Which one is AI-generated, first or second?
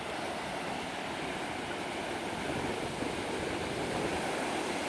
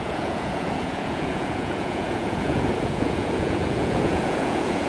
second